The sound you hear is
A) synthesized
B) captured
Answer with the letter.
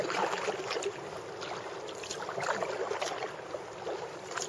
B